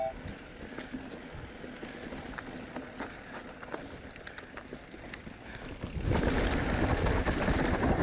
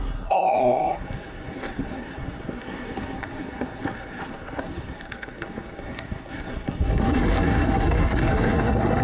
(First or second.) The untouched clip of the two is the first